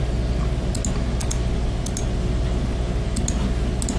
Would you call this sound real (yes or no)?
yes